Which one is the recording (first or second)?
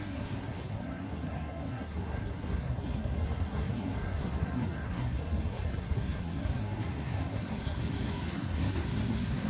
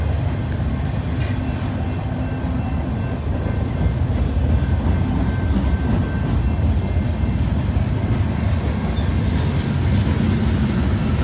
second